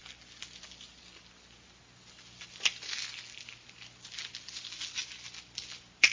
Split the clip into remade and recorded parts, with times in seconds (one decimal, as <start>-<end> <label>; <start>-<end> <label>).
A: 0.0-6.1 recorded